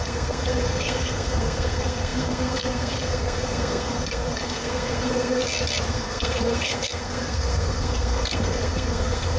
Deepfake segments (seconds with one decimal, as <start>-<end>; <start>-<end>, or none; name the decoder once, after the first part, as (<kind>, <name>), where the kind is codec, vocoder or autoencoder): 0.0-5.4 (codec, SNAC); 5.9-9.4